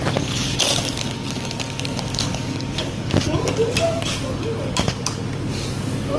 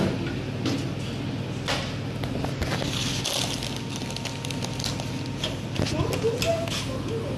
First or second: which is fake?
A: first